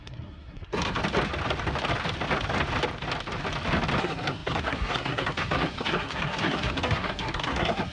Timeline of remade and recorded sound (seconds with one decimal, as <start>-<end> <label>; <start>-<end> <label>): 0.0-1.0 remade; 1.0-4.0 recorded; 4.0-7.9 remade